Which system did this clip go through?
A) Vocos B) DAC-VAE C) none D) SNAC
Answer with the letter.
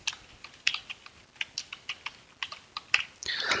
C